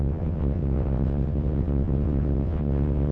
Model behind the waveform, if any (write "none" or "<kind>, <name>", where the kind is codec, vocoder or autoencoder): vocoder, WaveNeXt